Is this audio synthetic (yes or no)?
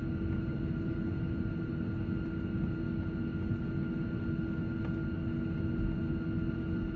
no